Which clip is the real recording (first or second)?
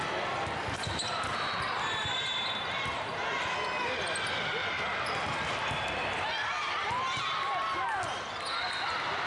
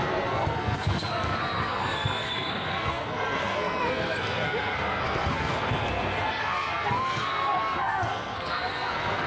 first